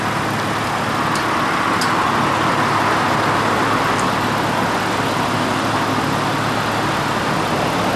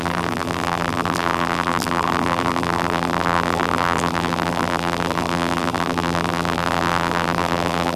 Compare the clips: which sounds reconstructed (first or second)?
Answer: second